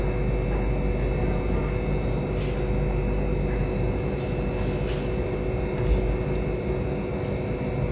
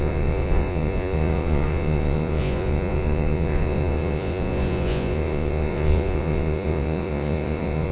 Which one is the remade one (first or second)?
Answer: second